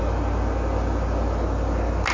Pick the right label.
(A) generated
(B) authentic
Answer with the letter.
B